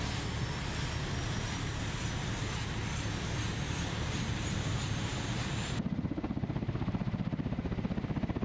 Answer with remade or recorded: recorded